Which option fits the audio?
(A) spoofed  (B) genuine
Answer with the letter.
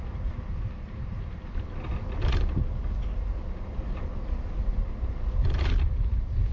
B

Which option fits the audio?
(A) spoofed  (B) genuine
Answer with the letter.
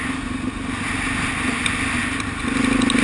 B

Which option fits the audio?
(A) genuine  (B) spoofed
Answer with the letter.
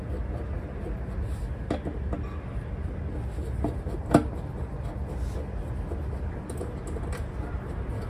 A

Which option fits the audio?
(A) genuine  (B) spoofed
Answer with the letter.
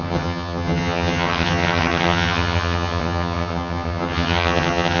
B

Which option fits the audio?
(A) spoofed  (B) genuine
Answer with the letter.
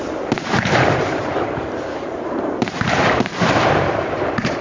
A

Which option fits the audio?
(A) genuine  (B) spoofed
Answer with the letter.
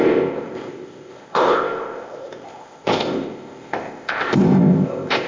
B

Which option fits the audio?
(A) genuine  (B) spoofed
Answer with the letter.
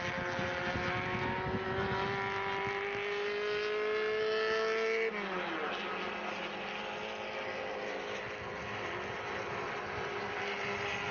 A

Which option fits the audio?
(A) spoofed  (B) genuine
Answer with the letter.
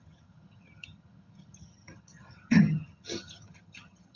A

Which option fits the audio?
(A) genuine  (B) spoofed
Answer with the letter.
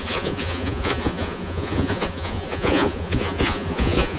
B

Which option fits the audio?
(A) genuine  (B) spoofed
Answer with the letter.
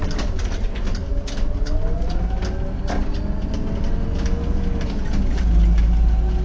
A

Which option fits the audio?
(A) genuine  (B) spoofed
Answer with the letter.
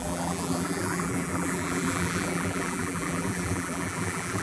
B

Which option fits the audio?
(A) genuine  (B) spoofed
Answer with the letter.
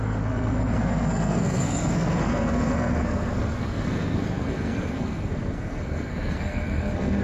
B